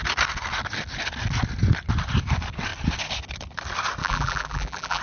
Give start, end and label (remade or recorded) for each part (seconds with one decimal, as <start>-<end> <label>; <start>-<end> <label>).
0.0-4.0 recorded; 4.0-5.0 remade